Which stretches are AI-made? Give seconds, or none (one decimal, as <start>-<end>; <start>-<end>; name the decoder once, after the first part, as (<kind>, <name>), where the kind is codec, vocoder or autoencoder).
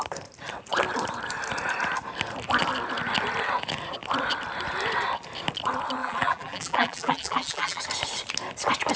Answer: 6.0-7.8 (vocoder, BigVGAN v2)